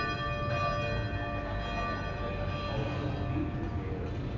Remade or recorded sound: recorded